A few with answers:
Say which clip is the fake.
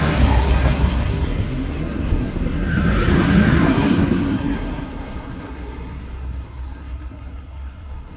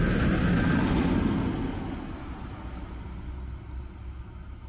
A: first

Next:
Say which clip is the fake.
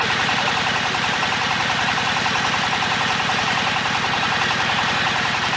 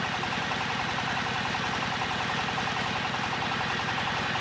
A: first